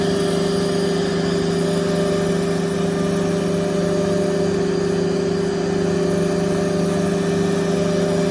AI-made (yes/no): no